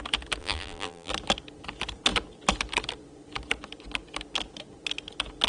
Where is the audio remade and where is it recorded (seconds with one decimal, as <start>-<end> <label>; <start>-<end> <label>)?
0.0-0.4 recorded; 0.4-1.1 remade; 1.1-5.5 recorded